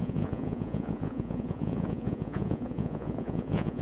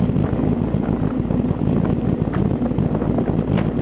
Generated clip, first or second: first